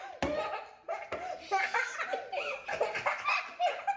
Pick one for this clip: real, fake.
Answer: real